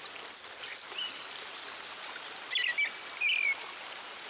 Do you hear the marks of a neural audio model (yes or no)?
no